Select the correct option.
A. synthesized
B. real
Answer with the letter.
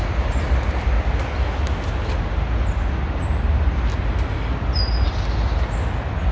B